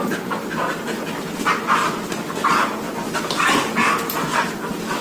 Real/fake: real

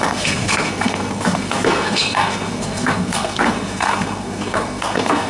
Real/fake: fake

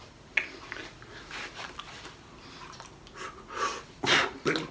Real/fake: real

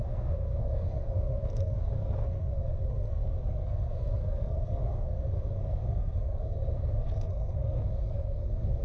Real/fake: fake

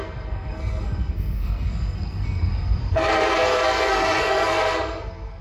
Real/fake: fake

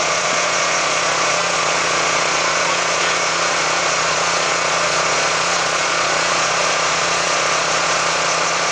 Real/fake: fake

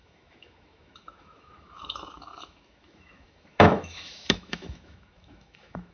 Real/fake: fake